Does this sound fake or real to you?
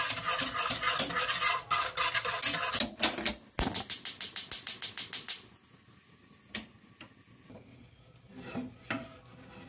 real